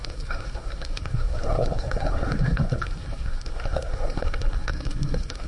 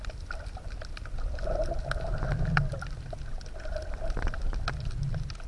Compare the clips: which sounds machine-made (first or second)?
first